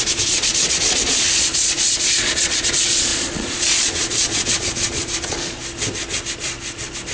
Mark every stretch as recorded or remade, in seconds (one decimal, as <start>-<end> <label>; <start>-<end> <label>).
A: 0.0-5.6 remade; 5.6-7.1 recorded